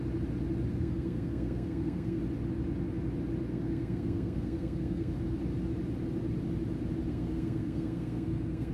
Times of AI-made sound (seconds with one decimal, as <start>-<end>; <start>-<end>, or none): 0.7-2.2; 3.5-5.1; 7.1-8.7